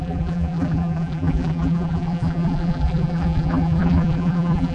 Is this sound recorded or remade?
remade